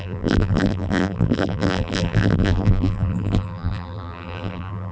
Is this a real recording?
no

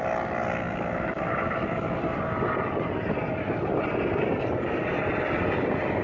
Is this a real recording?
yes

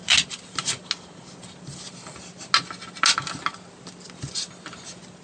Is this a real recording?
yes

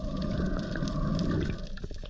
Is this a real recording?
yes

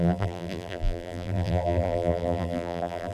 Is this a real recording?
no